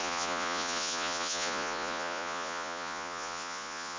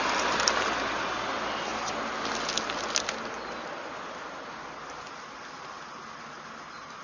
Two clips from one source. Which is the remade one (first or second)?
first